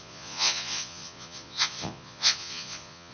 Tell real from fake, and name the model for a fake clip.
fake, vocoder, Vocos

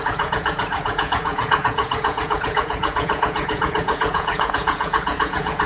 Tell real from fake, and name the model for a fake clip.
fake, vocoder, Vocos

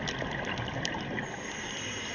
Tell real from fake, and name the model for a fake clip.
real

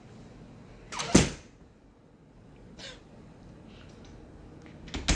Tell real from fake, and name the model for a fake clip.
real